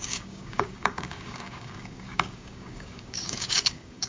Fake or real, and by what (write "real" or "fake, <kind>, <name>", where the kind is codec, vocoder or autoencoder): fake, codec, DAC